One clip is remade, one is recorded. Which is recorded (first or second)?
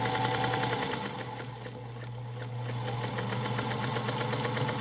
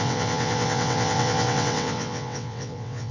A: first